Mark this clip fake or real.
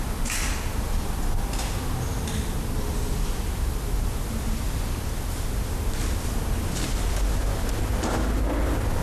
real